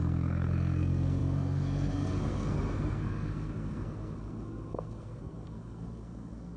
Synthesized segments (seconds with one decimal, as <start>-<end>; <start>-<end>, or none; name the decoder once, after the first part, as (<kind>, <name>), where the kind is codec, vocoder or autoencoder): 0.0-6.6 (codec, SNAC)